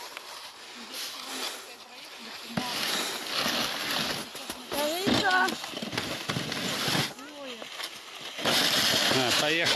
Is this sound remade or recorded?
recorded